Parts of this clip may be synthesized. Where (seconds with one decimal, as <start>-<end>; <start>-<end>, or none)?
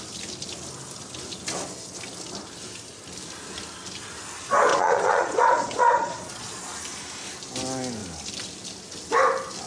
4.7-6.7